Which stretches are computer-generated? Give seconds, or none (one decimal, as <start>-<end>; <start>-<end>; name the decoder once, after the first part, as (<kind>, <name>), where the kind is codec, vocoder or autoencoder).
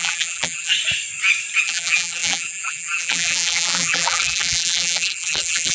0.0-0.7 (vocoder, BigVGAN v2); 1.6-5.7